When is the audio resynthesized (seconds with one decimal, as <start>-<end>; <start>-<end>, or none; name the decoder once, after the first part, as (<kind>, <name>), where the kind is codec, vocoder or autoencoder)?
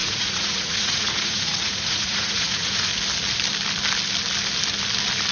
0.0-2.9 (vocoder, Vocos)